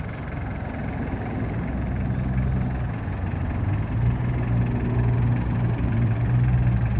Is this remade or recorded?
recorded